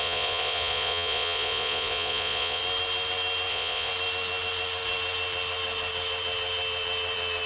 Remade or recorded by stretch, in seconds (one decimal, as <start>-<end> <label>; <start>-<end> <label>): 0.0-2.6 remade; 2.6-3.5 recorded; 3.5-3.9 remade; 3.9-7.5 recorded